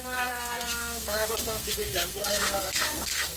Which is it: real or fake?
fake